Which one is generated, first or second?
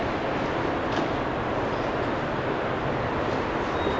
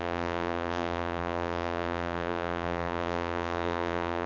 second